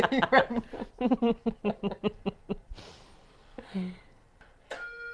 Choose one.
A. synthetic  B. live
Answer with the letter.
B